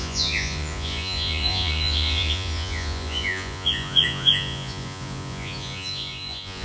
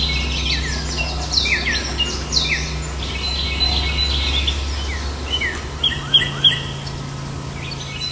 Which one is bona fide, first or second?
second